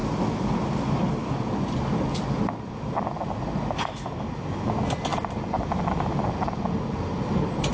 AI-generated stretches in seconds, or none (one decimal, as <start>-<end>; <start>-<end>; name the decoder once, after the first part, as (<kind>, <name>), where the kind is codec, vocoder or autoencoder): none